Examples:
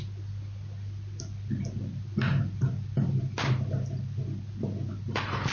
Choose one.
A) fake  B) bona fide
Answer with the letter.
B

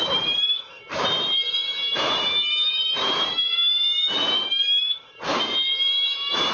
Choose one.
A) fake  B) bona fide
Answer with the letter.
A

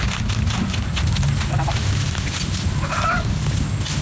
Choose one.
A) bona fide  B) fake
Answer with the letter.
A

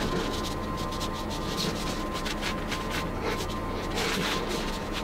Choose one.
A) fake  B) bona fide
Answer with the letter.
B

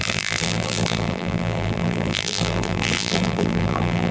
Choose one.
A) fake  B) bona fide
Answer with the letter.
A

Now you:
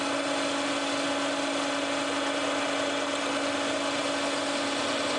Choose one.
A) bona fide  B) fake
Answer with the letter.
A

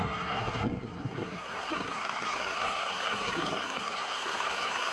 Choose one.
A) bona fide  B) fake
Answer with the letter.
B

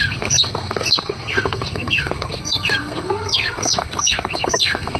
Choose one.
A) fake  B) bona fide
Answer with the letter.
A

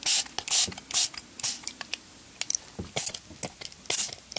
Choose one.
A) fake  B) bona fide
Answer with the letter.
B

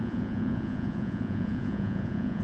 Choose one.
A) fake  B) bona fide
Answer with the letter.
A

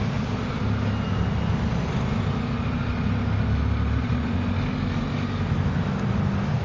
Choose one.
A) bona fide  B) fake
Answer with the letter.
A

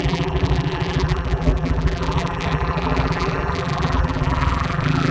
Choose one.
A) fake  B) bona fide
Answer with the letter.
A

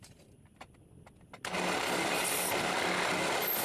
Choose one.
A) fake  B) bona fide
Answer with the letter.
B